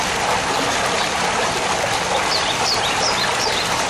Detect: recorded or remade recorded